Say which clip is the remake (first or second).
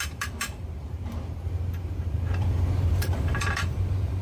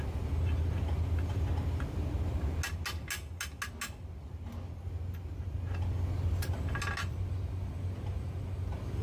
first